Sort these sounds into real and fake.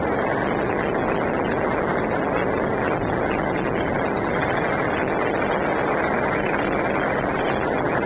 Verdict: real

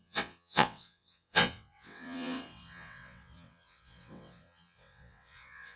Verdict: fake